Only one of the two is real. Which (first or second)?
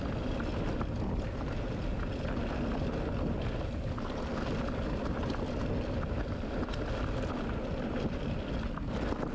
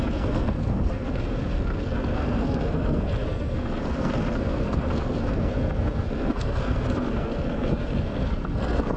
first